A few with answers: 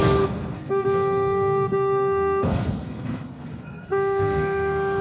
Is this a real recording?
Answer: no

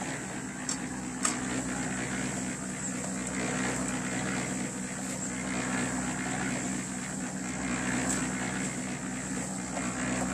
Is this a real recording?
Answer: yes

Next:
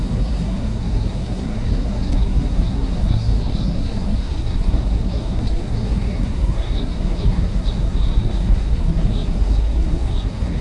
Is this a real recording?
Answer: no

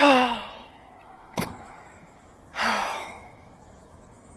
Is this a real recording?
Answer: no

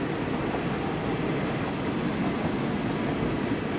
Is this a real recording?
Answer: yes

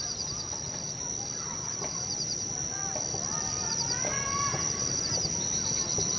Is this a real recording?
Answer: yes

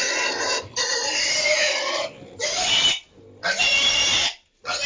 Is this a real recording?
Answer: no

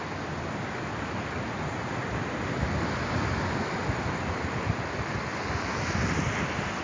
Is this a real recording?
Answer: yes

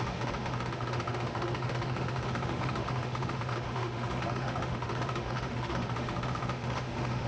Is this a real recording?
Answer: no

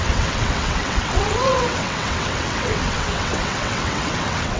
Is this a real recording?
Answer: no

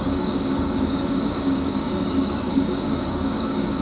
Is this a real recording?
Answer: no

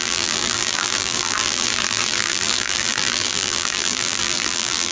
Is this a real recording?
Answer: no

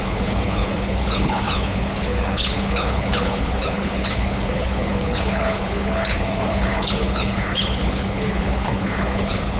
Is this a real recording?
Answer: no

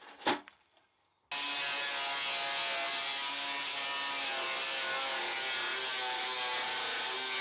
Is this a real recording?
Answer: yes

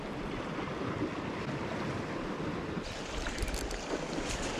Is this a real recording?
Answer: yes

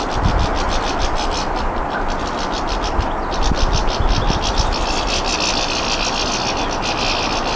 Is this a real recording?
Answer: yes